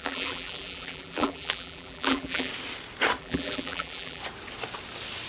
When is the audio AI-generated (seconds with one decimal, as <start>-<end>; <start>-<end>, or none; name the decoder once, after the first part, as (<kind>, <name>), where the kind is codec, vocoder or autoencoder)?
0.0-2.5 (vocoder, BigVGAN v2); 3.2-4.2